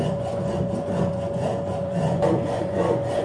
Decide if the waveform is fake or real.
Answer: fake